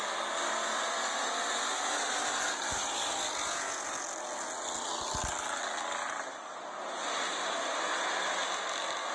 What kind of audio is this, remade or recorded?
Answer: recorded